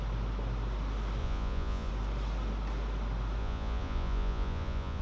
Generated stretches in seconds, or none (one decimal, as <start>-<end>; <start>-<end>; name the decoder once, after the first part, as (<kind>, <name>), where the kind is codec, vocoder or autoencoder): 1.2-1.9 (vocoder, Vocos); 3.4-5.0